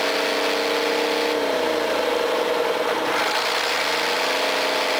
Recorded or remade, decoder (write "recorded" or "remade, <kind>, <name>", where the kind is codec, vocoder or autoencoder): recorded